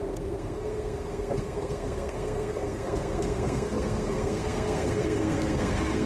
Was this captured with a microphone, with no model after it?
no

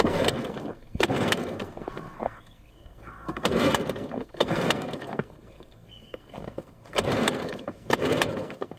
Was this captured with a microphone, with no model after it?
no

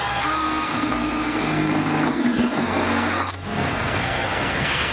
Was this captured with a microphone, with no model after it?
no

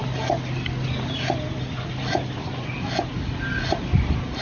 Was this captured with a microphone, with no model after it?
yes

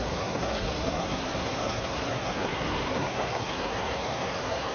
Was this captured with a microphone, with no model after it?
no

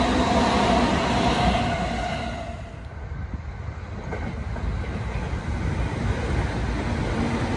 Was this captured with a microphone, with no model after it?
yes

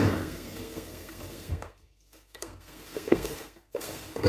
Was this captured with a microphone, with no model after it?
no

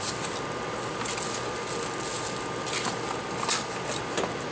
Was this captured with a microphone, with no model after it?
yes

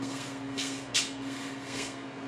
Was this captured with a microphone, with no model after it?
no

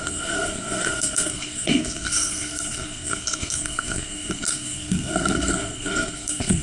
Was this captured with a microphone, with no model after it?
no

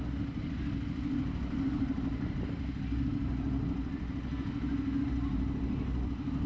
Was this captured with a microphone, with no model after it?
yes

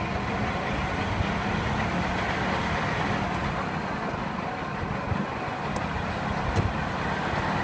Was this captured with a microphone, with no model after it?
yes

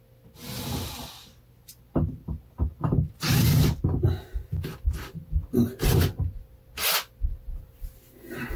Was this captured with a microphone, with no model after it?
yes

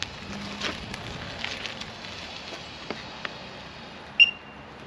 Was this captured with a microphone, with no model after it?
yes